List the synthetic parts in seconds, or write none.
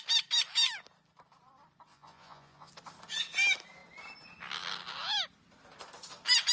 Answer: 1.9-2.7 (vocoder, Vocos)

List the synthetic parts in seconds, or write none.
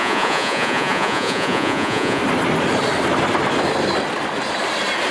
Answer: 0.0-2.2 (vocoder, Vocos)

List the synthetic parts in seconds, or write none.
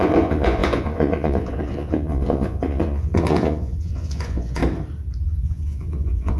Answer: 0.0-4.6 (vocoder, Vocos); 5.2-6.4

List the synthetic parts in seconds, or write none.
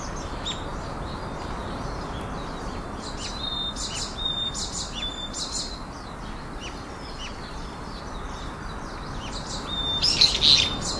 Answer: none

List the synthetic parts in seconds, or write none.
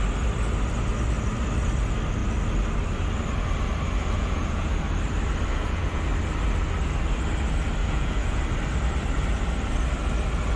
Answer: 4.0-4.8 (vocoder, Vocos); 5.5-6.0; 7.8-8.4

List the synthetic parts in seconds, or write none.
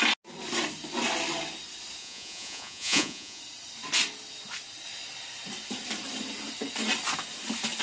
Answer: 2.0-3.4 (vocoder, Vocos)